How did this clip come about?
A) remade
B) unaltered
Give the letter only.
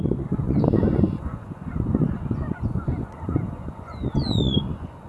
A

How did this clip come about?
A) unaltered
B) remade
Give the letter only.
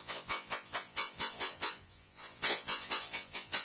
B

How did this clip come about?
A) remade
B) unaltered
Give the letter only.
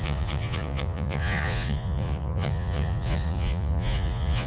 A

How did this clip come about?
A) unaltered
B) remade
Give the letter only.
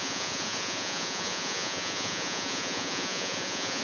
B